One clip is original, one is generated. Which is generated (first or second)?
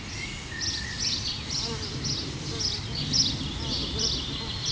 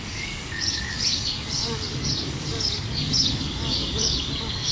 second